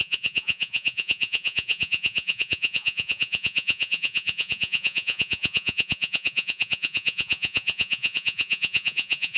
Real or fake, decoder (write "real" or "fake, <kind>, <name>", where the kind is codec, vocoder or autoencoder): fake, vocoder, Vocos